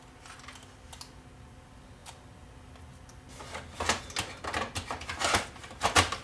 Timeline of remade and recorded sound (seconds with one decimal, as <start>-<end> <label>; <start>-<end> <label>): 0.0-6.2 recorded